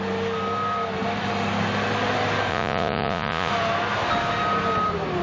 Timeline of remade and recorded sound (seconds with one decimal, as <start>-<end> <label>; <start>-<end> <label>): 0.0-2.5 recorded; 2.5-3.5 remade; 3.5-5.2 recorded